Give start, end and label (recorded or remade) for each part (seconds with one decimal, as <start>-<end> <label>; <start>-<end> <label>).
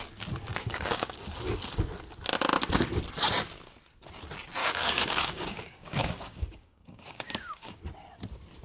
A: 0.0-0.5 recorded; 0.5-1.2 remade; 1.2-4.6 recorded; 4.6-7.8 remade; 7.8-8.6 recorded